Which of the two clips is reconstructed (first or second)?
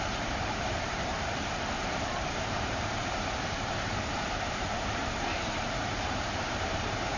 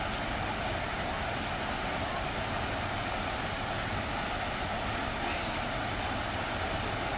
first